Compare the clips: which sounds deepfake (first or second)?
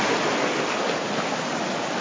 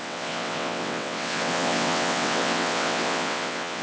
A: second